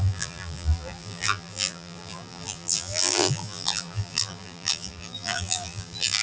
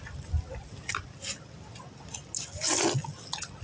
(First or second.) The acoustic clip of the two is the second